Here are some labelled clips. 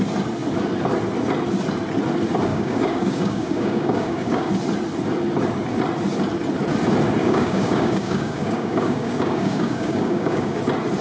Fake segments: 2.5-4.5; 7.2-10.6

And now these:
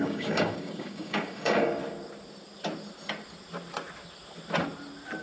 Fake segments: 0.0-1.8

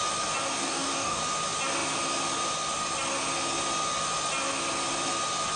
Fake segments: 0.6-1.2

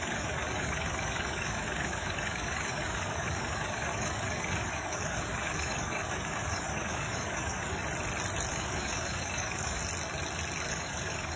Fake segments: 0.0-7.8; 8.5-9.8; 10.7-11.4

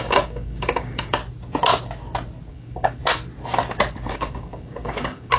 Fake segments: 0.0-1.2; 2.5-3.0; 4.1-5.4